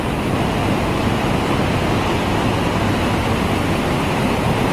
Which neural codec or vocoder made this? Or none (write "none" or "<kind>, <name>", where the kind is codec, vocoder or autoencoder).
none